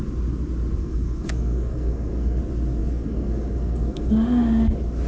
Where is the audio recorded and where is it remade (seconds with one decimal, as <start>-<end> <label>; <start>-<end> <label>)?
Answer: 0.0-0.8 recorded; 0.8-2.4 remade; 2.4-2.8 recorded; 2.8-4.1 remade; 4.1-5.1 recorded